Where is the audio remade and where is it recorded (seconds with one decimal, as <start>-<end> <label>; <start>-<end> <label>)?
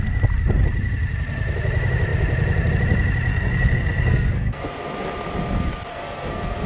0.0-3.3 recorded; 3.3-4.6 remade; 4.6-5.9 recorded; 5.9-6.7 remade